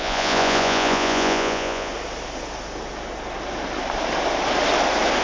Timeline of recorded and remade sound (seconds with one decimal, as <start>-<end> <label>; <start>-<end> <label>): 0.0-1.9 remade; 1.9-5.2 recorded